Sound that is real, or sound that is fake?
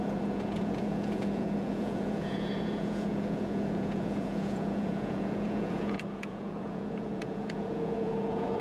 fake